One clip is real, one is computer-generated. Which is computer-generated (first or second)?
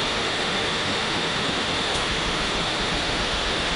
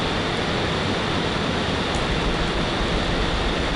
first